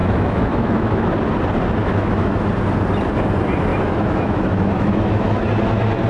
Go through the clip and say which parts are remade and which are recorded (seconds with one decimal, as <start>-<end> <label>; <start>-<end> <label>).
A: 0.0-1.1 remade; 1.1-1.8 recorded; 1.8-2.5 remade; 2.5-3.7 recorded; 3.7-5.4 remade; 5.4-6.1 recorded